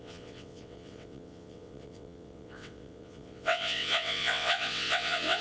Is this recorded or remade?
remade